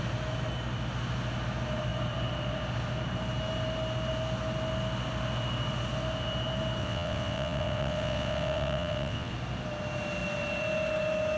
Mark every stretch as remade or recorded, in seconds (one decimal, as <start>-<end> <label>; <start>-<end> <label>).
0.0-6.8 recorded; 6.8-9.3 remade; 9.3-11.4 recorded